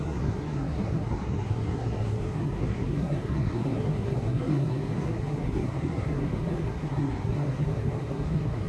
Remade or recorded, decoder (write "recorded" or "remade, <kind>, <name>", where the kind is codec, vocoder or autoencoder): remade, codec, SNAC